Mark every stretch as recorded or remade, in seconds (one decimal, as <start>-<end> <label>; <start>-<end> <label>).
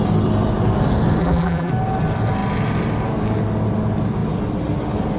0.0-1.2 recorded; 1.2-1.7 remade; 1.7-5.2 recorded